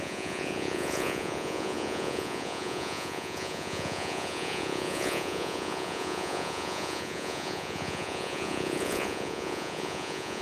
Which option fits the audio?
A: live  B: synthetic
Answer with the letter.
B